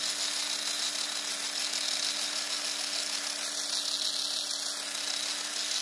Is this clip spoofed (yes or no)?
no